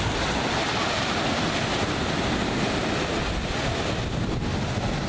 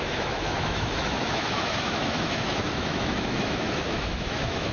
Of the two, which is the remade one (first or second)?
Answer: second